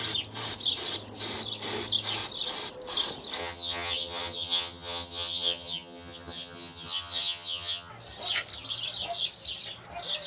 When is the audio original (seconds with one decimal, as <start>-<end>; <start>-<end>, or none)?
0.0-3.4; 7.9-10.3